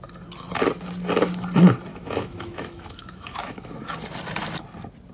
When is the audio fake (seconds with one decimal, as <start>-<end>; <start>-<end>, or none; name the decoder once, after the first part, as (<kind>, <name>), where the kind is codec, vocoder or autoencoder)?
1.9-3.9 (autoencoder, DAC-VAE)